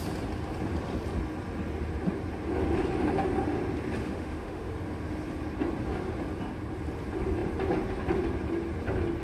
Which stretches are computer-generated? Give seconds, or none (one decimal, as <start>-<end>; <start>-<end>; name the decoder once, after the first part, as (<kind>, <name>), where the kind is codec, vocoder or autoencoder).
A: 4.0-4.7 (autoencoder, DAC-VAE)